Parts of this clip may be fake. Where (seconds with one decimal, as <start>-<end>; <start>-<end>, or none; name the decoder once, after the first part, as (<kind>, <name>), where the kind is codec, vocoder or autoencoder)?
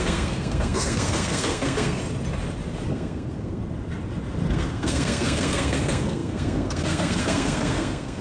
0.0-2.0 (codec, SNAC); 2.9-3.6; 4.5-8.2